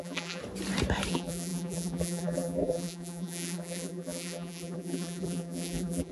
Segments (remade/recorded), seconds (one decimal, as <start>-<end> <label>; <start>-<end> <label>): 0.0-0.4 remade; 0.4-1.1 recorded; 1.1-6.1 remade